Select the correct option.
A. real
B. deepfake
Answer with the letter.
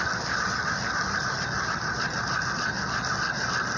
A